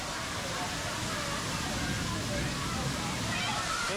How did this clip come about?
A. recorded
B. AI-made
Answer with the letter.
A